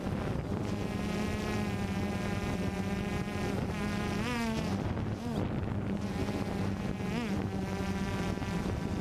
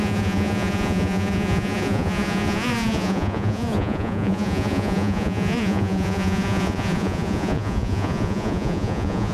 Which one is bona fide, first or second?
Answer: first